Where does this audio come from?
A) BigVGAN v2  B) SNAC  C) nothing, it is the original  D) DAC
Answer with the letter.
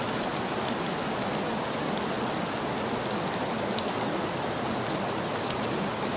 C